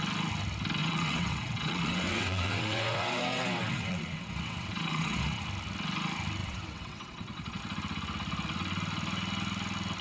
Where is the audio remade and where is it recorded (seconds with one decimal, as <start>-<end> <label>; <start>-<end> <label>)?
0.0-0.8 recorded; 0.8-5.4 remade; 5.4-6.4 recorded; 6.4-7.6 remade; 7.6-10.0 recorded